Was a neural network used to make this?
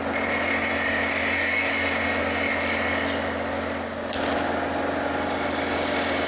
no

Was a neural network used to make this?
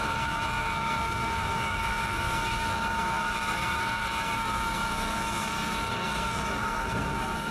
yes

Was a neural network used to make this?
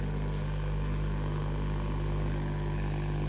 yes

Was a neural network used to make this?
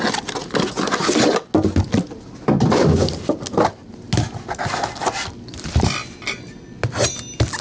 no